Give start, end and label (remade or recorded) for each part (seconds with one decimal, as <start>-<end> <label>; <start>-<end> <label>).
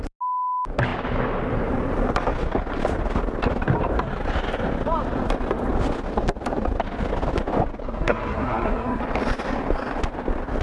0.0-7.8 recorded; 7.8-9.0 remade; 9.0-10.6 recorded